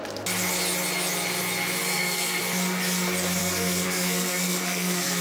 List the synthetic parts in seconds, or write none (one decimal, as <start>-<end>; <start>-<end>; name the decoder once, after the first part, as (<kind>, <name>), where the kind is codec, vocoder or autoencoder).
1.8-2.4 (codec, SNAC); 3.4-5.2